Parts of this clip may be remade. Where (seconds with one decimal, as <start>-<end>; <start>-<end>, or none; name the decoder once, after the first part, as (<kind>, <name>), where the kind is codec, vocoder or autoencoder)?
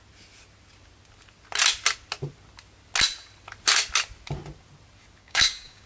5.2-5.9 (codec, DAC)